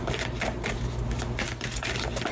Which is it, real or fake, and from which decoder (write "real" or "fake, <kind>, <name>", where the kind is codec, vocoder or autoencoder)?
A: real